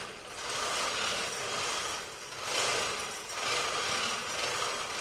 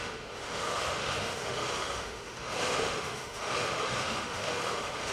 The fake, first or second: second